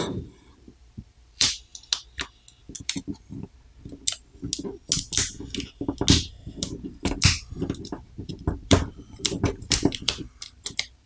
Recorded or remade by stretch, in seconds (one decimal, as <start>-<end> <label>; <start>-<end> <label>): 0.0-1.7 remade; 1.7-2.8 recorded; 2.8-3.7 remade; 3.7-8.3 recorded; 8.3-11.1 remade